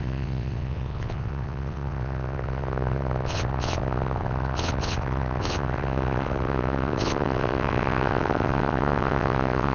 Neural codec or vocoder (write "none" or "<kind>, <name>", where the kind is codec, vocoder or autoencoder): vocoder, WaveNeXt